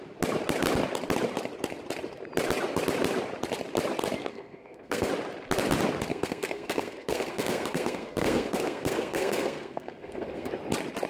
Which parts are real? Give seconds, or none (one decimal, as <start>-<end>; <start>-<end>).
0.0-4.3; 5.1-6.1; 10.5-11.1